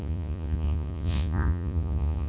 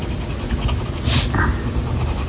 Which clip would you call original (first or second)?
second